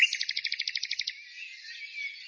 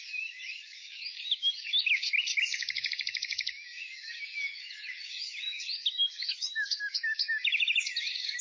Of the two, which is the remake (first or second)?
second